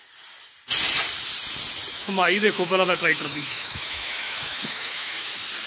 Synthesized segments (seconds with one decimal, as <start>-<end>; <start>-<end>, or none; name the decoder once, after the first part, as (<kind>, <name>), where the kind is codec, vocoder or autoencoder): 1.9-5.3 (autoencoder, DAC-VAE)